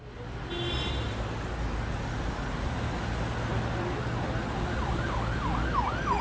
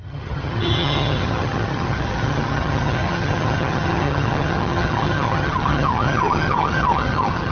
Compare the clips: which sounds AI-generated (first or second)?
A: second